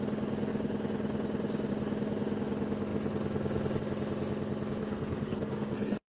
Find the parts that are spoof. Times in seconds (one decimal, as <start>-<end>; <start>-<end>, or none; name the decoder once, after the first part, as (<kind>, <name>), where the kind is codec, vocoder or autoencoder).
4.8-6.2 (codec, SNAC)